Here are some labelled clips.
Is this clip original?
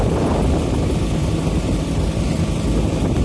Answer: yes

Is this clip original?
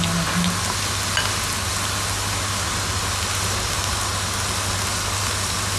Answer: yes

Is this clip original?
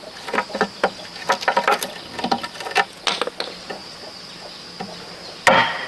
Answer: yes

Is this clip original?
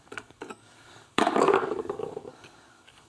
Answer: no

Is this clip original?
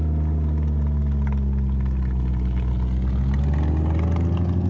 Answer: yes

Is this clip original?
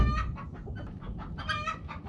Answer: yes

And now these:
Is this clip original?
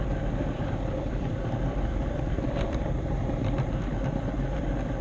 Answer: no